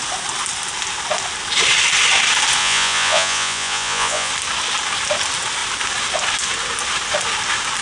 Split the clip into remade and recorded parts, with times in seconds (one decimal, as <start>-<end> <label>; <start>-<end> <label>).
0.0-2.6 recorded; 2.6-4.3 remade; 4.3-7.8 recorded